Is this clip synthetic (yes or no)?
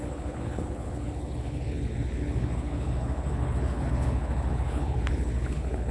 yes